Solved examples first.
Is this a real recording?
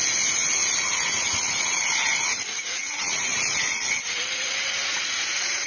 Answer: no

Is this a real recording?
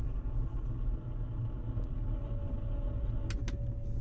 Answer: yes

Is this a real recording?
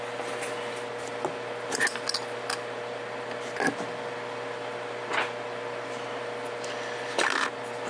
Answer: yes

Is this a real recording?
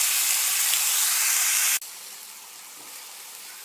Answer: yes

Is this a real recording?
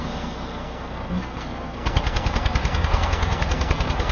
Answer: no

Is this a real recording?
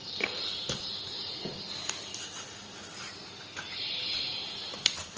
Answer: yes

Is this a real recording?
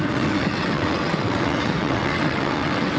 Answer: no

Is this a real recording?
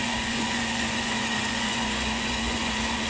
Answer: no